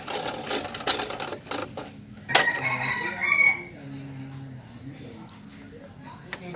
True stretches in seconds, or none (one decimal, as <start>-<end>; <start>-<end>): 0.0-6.6